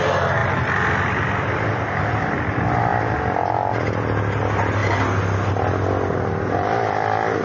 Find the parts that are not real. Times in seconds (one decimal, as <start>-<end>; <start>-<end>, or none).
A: none